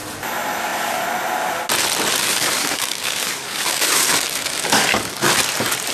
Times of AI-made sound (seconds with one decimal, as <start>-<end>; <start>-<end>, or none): 2.2-5.3